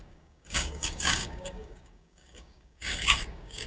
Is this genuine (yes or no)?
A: no